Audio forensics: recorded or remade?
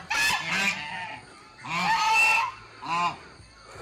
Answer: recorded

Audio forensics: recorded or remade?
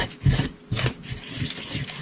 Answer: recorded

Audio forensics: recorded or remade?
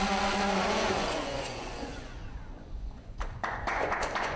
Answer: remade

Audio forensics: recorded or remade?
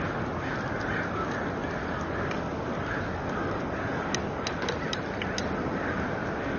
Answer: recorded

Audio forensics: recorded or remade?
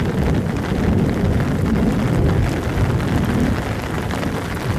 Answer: recorded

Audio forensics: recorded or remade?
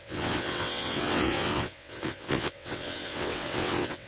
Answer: remade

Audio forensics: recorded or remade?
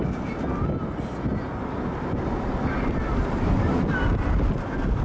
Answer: recorded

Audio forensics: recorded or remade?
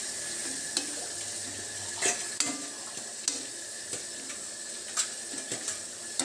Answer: recorded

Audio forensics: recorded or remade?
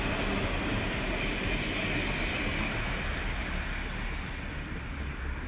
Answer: recorded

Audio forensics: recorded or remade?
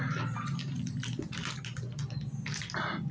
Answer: recorded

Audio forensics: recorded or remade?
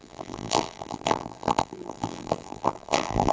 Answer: remade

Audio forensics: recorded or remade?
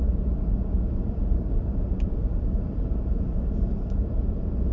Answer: remade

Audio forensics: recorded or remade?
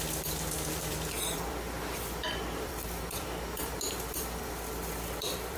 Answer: remade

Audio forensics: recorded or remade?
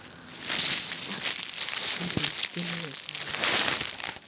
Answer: recorded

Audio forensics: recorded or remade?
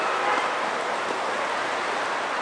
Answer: recorded